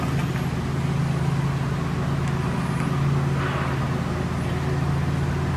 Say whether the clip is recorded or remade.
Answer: recorded